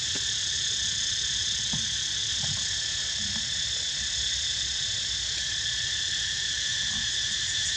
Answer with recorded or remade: recorded